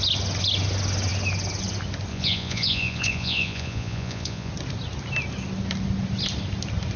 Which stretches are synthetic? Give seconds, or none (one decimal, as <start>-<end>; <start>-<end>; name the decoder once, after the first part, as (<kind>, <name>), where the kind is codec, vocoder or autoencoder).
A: 2.1-4.5 (vocoder, Vocos)